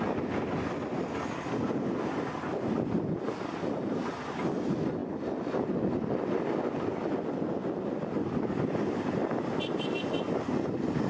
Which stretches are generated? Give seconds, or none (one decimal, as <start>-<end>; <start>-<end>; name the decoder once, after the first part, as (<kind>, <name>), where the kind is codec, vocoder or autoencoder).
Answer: 0.0-11.1 (vocoder, BigVGAN v2)